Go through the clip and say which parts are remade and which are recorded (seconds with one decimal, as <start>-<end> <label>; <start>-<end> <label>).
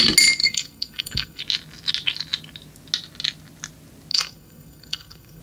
0.0-0.4 recorded; 0.4-1.4 remade; 1.4-4.1 recorded; 4.1-5.4 remade